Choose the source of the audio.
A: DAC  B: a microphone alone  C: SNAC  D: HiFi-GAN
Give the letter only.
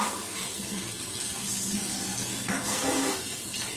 C